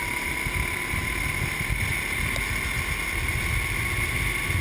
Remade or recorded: recorded